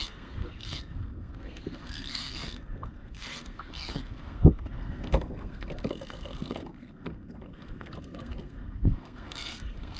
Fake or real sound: fake